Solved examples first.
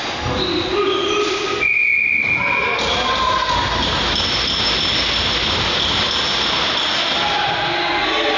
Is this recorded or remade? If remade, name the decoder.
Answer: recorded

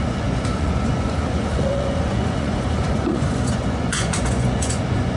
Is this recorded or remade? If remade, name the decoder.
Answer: remade, vocoder, Vocos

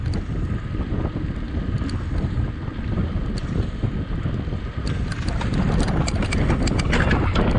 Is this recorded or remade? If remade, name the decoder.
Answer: recorded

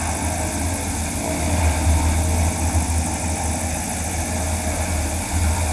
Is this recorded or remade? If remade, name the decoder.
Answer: recorded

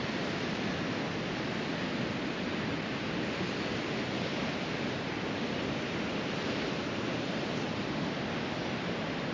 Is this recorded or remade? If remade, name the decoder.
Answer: recorded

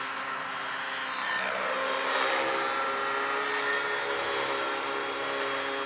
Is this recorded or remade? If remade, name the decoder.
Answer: recorded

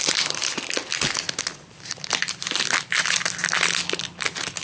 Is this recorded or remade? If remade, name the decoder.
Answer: recorded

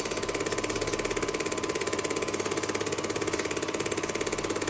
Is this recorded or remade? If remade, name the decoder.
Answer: recorded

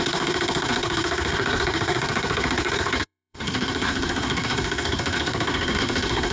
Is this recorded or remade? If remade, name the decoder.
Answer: remade, codec, SNAC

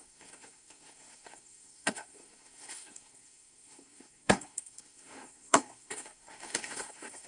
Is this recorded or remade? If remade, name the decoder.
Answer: remade, codec, SNAC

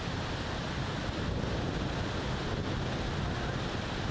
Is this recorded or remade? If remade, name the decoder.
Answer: recorded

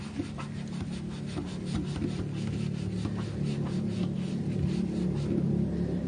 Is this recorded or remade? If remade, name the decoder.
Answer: recorded